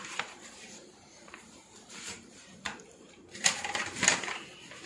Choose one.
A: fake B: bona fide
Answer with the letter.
A